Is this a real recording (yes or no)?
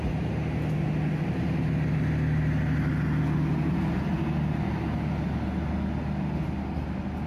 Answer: yes